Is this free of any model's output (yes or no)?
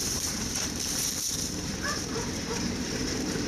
no